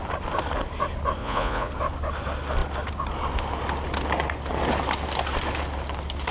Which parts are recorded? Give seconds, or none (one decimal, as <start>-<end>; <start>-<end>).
0.0-1.2; 1.7-6.3